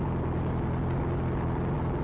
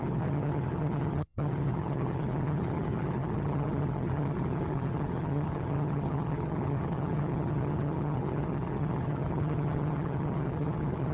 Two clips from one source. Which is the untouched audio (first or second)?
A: first